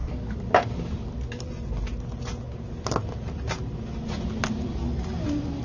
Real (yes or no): yes